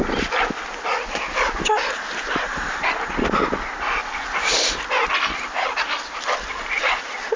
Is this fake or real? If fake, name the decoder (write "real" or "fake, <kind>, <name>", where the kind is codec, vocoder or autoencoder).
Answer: real